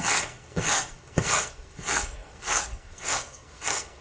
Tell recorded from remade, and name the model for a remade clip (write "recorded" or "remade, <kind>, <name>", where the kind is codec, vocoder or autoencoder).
remade, codec, SNAC